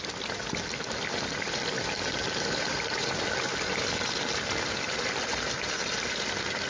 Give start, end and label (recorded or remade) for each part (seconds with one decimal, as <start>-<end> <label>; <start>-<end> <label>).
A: 0.0-6.7 recorded